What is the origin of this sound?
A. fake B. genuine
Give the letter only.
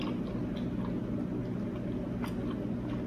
B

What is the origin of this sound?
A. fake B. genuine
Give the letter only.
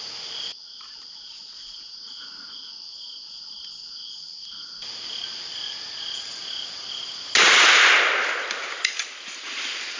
B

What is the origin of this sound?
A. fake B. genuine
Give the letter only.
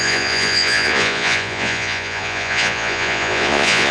A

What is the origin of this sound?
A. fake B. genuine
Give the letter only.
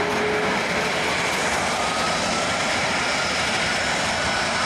B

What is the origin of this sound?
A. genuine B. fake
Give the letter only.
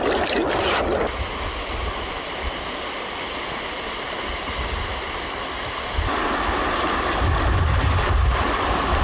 A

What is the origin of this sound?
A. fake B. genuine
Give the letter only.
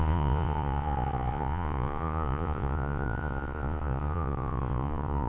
A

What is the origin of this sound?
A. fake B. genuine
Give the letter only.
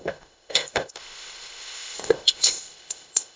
A